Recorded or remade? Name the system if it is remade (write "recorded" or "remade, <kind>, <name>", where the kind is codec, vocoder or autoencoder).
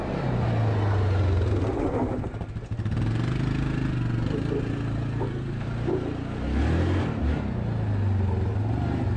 recorded